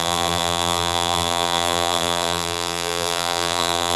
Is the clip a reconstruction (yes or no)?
yes